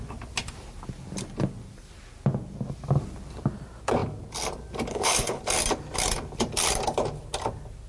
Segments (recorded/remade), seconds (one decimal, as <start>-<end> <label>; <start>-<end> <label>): 0.0-4.9 recorded; 4.9-5.4 remade; 5.4-7.9 recorded